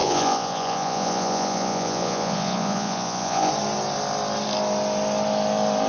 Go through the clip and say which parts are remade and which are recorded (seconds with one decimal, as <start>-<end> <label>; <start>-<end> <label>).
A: 0.0-3.5 remade; 3.5-5.9 recorded